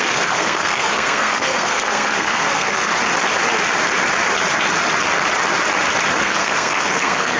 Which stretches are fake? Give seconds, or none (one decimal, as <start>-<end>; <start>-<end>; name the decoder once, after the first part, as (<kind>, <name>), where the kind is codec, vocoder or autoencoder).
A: 0.0-2.9 (codec, SNAC); 6.2-7.4

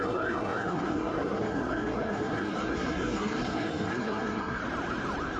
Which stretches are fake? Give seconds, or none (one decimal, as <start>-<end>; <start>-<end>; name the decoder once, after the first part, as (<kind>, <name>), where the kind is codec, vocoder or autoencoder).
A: 0.0-4.6 (codec, SNAC)

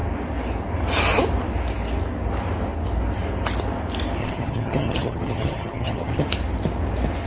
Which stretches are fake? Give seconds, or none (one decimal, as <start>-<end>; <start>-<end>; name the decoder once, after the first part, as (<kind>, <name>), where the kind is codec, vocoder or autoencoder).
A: 4.2-6.3 (vocoder, HiFi-GAN)